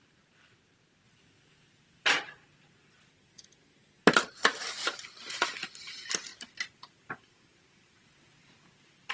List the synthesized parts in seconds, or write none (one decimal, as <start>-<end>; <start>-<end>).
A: none